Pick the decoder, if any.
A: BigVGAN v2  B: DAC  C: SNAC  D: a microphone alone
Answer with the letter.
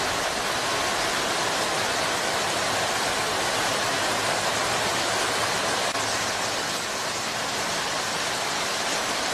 D